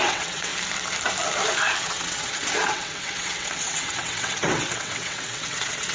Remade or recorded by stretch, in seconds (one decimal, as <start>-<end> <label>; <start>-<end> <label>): 0.0-0.5 remade; 0.5-1.8 recorded; 1.8-5.9 remade